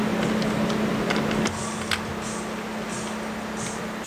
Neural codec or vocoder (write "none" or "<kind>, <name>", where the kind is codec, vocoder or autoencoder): none